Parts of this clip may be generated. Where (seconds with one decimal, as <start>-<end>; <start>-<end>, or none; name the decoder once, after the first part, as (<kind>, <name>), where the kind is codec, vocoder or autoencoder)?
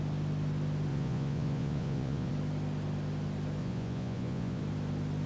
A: 0.9-2.3 (vocoder, Vocos); 3.6-4.6